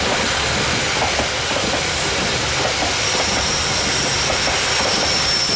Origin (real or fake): real